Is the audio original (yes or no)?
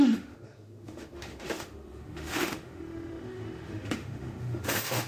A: no